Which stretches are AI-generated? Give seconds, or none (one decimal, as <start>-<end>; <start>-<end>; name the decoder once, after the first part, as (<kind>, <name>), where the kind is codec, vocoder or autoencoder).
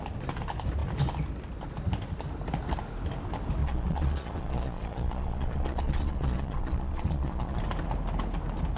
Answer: 3.6-7.6 (vocoder, Vocos)